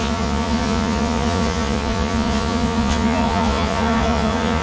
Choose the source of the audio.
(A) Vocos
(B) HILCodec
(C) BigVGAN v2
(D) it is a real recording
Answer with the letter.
A